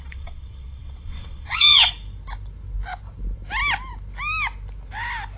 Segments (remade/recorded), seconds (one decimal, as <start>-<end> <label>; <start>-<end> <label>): 0.0-1.9 remade; 1.9-5.4 recorded